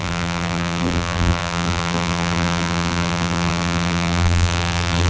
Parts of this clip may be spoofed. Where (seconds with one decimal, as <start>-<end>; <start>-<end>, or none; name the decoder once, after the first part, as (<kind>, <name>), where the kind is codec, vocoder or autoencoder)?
0.0-5.1 (vocoder, BigVGAN v2)